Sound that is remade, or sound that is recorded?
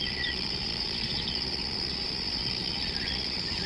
remade